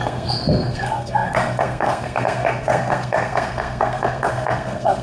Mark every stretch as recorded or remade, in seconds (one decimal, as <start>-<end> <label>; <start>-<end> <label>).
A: 0.0-5.0 remade